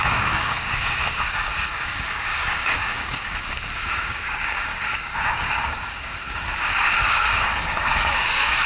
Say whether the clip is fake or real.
fake